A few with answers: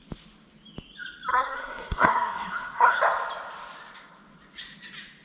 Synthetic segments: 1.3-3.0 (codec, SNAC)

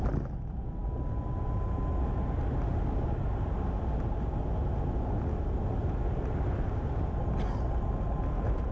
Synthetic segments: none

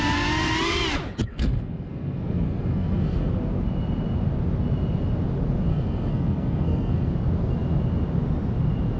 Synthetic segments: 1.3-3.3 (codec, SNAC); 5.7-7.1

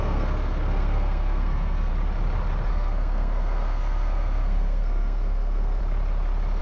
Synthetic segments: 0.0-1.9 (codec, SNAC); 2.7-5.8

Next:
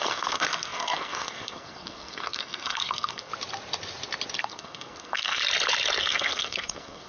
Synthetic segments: 0.0-3.3 (codec, SNAC); 4.4-5.4; 6.0-7.1

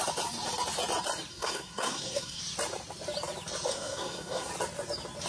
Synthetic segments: 1.3-2.4 (codec, SNAC); 3.7-4.5